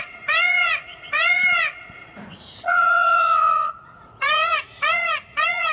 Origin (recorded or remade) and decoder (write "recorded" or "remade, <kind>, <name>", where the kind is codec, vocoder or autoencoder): remade, vocoder, Vocos